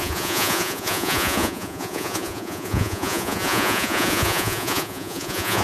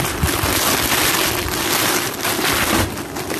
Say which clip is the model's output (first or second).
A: first